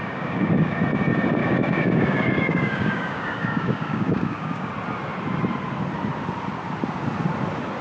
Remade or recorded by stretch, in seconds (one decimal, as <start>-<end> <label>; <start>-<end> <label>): 0.0-0.8 remade; 0.8-1.4 recorded; 1.4-4.7 remade; 4.7-7.8 recorded

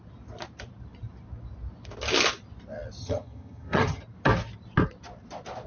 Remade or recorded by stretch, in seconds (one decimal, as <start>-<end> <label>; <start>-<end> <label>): 0.0-3.0 recorded; 3.0-4.0 remade; 4.0-5.7 recorded

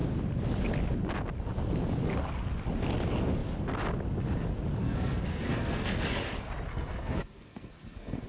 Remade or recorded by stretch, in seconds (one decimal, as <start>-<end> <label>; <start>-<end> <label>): 0.0-4.8 recorded; 4.8-5.9 remade; 5.9-6.7 recorded; 6.7-8.3 remade

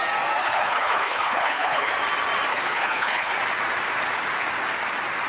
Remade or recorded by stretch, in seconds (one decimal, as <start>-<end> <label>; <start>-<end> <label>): 0.0-0.4 recorded; 0.4-1.9 remade; 1.9-2.5 recorded; 2.5-3.4 remade; 3.4-5.3 recorded